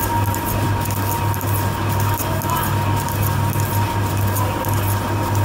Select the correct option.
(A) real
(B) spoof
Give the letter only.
A